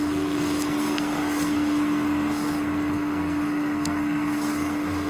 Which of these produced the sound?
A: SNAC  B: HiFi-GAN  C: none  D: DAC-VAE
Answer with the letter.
A